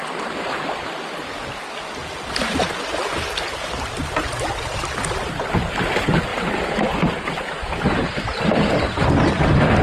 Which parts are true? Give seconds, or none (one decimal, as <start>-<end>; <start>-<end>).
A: 0.0-2.0; 2.7-9.8